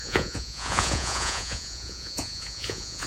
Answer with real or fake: fake